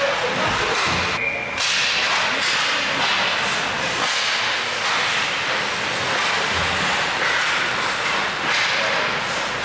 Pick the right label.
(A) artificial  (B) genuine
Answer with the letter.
B